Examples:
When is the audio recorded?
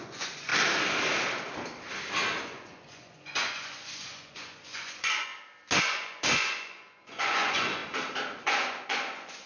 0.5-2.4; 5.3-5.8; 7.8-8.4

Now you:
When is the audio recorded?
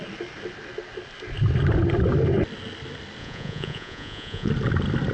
0.0-3.2; 4.5-5.1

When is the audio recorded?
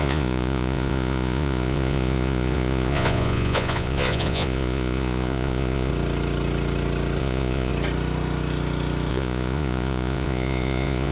5.9-7.2; 7.7-9.1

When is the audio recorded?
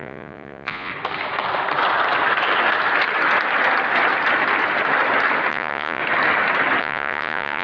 0.9-5.5; 6.0-6.8